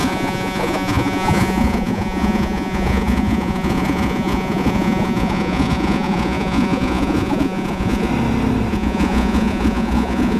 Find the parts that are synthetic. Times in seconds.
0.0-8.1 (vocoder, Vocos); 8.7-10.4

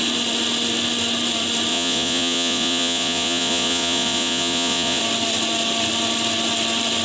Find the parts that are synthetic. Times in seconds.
1.7-5.0 (vocoder, Vocos)

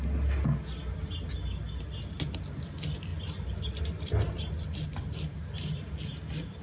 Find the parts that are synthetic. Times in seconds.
none

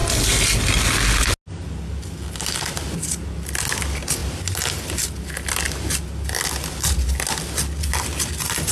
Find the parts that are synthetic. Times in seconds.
none

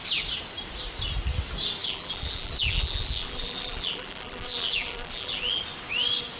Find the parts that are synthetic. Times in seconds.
1.8-5.6 (vocoder, BigVGAN v2)

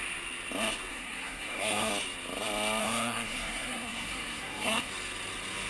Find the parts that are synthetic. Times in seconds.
0.9-1.9 (codec, SNAC); 2.8-4.9